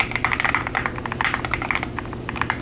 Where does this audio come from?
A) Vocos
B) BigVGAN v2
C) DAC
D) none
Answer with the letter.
D